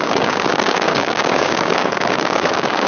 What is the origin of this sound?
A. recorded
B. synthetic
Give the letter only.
B